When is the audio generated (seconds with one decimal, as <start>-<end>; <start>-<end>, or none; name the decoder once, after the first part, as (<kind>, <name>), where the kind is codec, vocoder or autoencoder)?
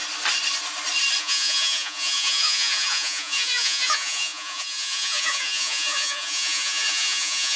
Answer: 1.2-7.6 (vocoder, Vocos)